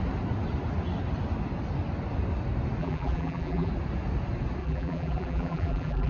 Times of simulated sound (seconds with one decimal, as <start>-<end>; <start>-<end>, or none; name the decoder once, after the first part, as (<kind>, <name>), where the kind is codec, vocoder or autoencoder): 2.8-3.7 (vocoder, BigVGAN v2); 4.6-6.1